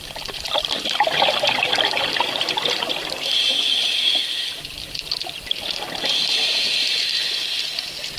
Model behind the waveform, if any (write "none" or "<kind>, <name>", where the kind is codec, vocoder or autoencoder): none